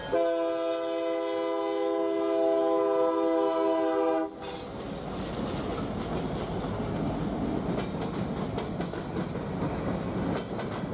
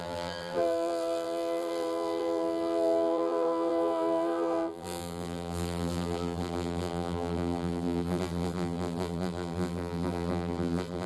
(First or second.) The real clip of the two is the first